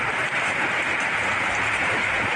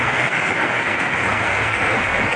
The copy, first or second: second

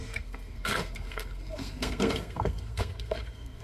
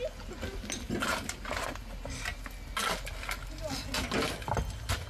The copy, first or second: first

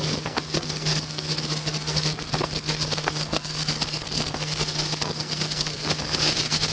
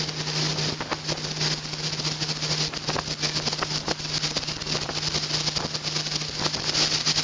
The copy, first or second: first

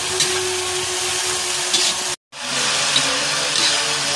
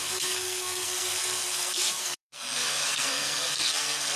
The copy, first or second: second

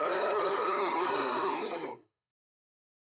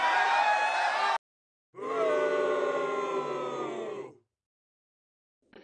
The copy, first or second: first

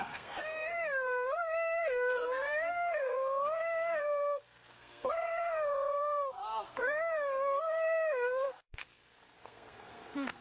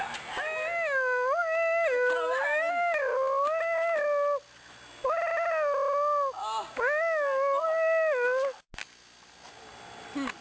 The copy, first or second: first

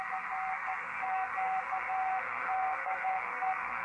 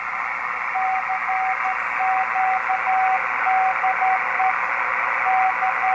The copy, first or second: first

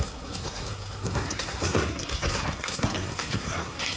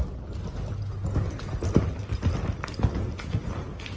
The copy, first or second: first